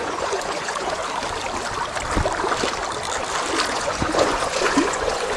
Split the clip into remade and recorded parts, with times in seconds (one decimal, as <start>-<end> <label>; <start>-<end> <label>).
0.0-1.0 remade; 1.0-3.7 recorded; 3.7-5.4 remade